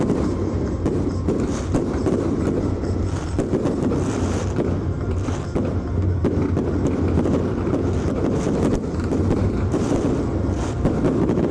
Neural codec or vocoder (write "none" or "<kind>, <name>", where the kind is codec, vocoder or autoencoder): none